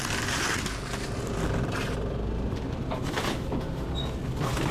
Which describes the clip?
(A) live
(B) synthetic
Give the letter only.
A